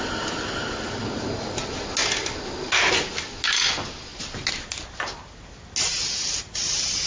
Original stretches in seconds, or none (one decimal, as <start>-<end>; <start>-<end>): 0.0-7.1